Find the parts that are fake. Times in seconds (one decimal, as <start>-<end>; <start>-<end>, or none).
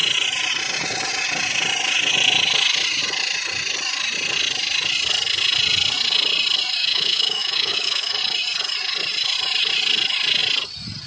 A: 6.8-8.1